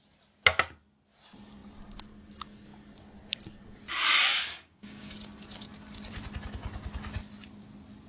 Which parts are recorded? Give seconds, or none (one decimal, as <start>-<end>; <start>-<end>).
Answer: 0.0-4.3; 5.1-8.1